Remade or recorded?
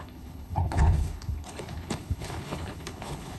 remade